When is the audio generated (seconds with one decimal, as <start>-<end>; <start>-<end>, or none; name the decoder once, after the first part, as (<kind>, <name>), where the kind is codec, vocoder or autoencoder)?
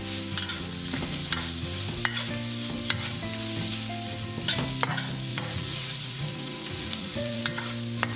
5.3-7.4 (vocoder, Vocos)